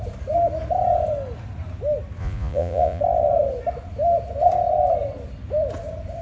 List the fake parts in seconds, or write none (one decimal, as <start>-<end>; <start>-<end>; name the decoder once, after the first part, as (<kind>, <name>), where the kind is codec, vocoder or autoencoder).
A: 2.2-3.0 (vocoder, Vocos)